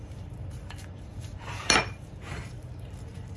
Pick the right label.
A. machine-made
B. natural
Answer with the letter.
A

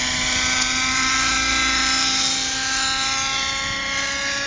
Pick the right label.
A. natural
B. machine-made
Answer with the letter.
B